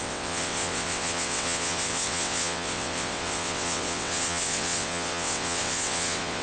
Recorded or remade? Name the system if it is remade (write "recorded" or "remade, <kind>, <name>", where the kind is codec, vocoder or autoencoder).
remade, vocoder, WaveNeXt